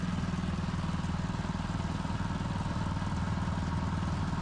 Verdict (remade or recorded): recorded